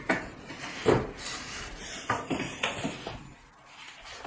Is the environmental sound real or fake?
real